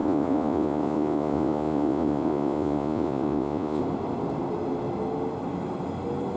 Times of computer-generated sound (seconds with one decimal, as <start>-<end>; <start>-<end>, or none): 0.0-3.8